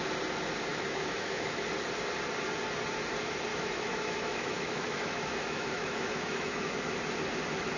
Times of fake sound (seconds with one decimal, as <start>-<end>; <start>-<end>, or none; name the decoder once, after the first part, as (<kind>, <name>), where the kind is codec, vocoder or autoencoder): 0.7-1.6 (autoencoder, DAC-VAE); 3.5-6.8